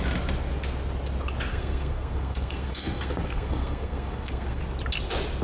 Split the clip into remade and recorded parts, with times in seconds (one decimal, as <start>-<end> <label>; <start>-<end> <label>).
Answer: 0.0-1.5 recorded; 1.5-4.6 remade; 4.6-5.4 recorded